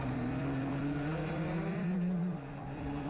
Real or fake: fake